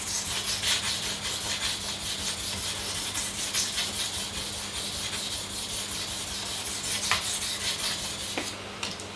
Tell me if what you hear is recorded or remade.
recorded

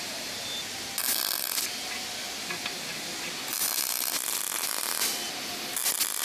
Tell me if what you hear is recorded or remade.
recorded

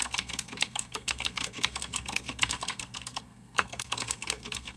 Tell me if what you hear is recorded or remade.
remade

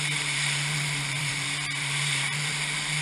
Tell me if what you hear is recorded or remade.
remade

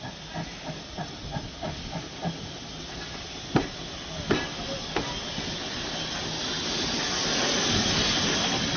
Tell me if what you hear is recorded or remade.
recorded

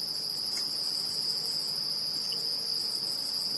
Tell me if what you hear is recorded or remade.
recorded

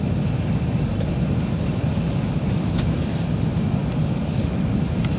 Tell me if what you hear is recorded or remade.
recorded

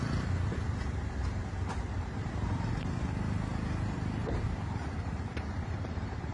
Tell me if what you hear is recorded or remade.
remade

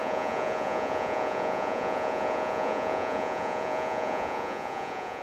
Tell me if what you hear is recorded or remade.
remade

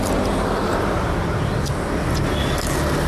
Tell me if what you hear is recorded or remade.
recorded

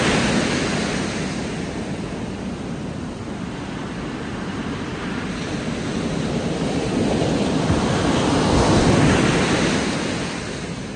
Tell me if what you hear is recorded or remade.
recorded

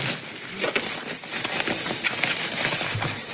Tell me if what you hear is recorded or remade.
recorded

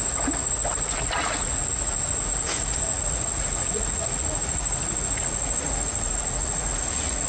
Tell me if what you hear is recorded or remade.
remade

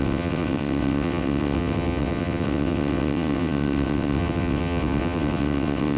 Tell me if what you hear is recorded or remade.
remade